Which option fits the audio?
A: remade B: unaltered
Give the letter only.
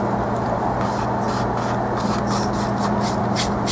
B